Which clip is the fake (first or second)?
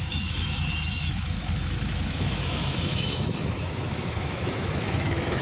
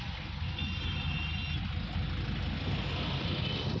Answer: first